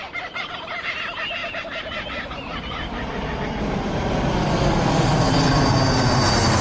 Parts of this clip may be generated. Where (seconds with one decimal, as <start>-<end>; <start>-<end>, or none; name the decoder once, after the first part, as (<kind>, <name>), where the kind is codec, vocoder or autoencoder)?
none